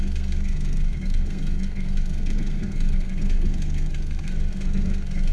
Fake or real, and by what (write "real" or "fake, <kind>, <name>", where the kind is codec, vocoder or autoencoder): fake, codec, SNAC